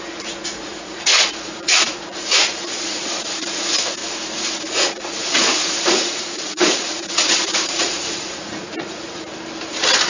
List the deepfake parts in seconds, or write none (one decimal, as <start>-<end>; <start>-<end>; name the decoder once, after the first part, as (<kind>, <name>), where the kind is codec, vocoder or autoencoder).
0.0-4.0 (vocoder, Vocos); 4.6-9.3

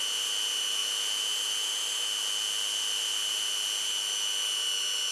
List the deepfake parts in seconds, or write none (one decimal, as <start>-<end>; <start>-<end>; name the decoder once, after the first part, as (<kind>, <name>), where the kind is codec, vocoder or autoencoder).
none